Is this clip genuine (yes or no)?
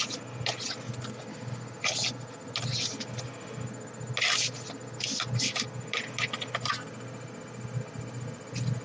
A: yes